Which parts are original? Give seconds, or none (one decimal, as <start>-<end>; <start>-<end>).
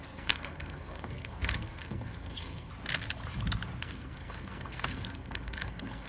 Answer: 2.7-3.8